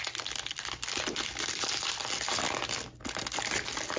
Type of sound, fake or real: real